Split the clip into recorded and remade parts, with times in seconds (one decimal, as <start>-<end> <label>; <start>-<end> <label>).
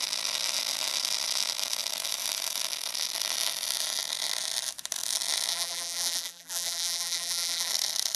0.0-5.5 recorded; 5.5-7.7 remade; 7.7-8.2 recorded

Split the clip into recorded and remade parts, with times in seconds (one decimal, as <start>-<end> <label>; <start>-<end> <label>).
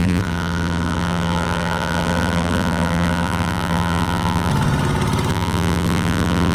0.0-4.5 remade; 4.5-5.3 recorded; 5.3-6.5 remade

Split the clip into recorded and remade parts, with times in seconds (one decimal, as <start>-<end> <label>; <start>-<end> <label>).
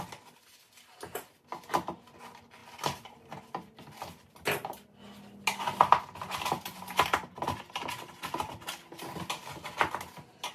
0.0-10.5 recorded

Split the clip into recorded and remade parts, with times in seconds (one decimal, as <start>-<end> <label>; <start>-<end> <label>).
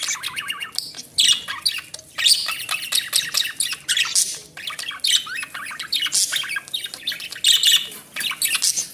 0.0-8.9 recorded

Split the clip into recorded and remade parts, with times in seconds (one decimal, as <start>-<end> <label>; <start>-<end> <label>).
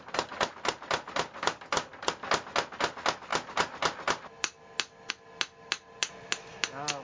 0.0-7.0 recorded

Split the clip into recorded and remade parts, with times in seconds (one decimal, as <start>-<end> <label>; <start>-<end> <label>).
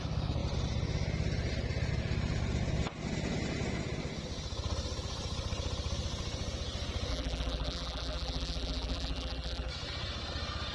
0.0-7.1 recorded; 7.1-9.7 remade; 9.7-10.7 recorded